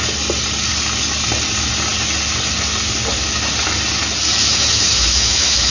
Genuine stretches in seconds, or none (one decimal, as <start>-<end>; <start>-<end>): 0.0-4.4